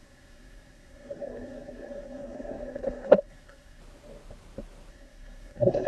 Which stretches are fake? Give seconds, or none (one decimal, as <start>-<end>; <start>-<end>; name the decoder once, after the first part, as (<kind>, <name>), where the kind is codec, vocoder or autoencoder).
0.0-3.8 (codec, SNAC); 4.9-5.9